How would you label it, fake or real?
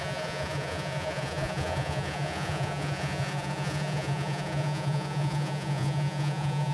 fake